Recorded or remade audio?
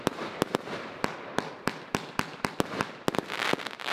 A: recorded